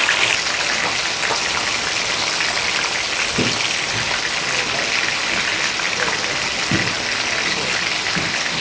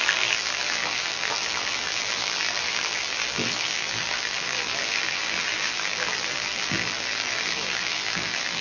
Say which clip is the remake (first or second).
second